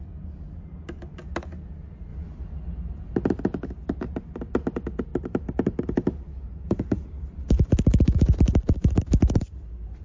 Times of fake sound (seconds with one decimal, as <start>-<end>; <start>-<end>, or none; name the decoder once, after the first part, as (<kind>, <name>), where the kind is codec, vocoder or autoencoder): 5.1-9.0 (vocoder, BigVGAN v2)